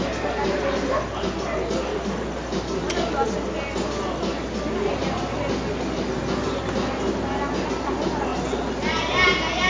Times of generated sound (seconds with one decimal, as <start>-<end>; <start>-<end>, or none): none